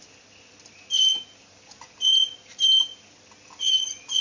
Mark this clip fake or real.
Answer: real